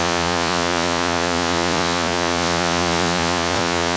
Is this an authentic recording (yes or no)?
no